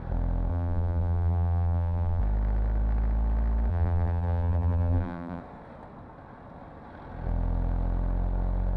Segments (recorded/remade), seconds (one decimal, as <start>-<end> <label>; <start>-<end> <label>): 0.0-0.5 recorded; 0.5-2.2 remade; 2.2-3.7 recorded; 3.7-5.4 remade; 5.4-8.8 recorded